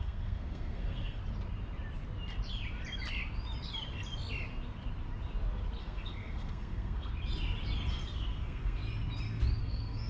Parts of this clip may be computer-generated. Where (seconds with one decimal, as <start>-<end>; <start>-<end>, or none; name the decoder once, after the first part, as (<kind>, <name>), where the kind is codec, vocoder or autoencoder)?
0.0-1.2 (codec, SNAC); 5.8-7.1; 7.9-8.8; 9.6-10.1